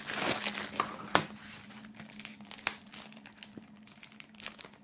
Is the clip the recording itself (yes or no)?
yes